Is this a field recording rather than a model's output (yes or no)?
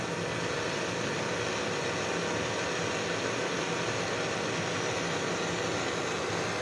yes